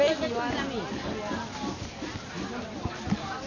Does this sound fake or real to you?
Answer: real